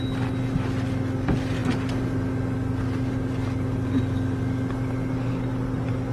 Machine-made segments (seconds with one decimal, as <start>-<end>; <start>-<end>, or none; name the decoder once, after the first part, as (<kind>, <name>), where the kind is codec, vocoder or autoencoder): none